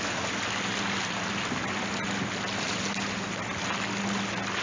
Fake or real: real